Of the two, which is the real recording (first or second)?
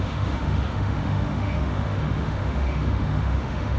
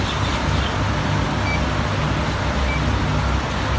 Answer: second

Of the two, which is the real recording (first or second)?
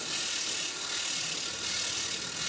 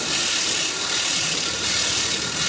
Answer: first